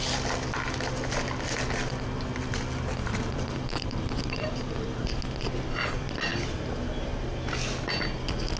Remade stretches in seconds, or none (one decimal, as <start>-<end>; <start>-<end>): 3.0-5.1